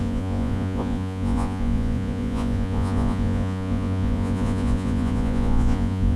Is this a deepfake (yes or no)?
yes